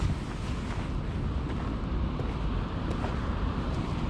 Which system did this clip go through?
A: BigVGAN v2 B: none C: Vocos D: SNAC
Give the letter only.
B